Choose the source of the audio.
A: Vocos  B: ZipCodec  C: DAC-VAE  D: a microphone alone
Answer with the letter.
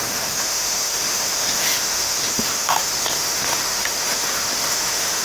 C